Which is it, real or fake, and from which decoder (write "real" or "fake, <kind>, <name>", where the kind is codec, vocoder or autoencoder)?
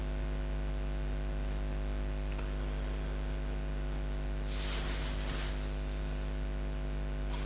real